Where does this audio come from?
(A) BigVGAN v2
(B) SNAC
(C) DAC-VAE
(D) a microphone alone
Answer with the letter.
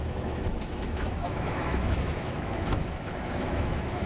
C